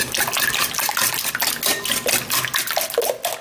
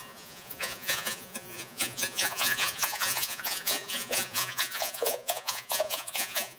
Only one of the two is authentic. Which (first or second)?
first